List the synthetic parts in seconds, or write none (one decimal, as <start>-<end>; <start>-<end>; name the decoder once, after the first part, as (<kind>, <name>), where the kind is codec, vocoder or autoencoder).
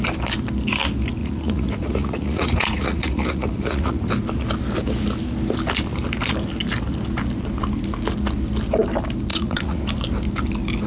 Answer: 1.2-4.1 (vocoder, Vocos); 9.3-9.8